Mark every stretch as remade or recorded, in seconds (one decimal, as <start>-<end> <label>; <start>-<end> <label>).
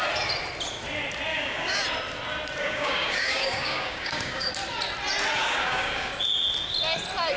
0.0-1.3 recorded; 1.3-1.8 remade; 1.8-2.6 recorded; 2.6-4.5 remade; 4.5-5.4 recorded; 5.4-6.1 remade; 6.1-7.4 recorded